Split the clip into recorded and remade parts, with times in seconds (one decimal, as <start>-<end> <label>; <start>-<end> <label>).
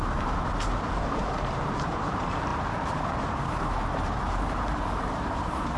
0.0-5.8 remade